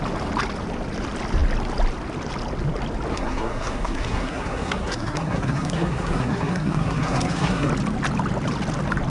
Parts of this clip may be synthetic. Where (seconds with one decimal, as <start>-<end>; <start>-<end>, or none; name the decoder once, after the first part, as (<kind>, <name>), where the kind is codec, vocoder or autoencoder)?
3.1-7.7 (codec, SNAC)